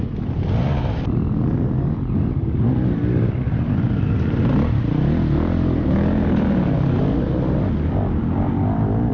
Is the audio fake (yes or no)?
no